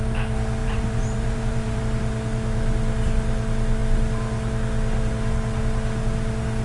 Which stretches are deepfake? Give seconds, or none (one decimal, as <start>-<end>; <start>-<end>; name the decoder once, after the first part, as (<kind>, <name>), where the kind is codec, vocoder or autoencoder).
0.6-1.8 (vocoder, BigVGAN v2)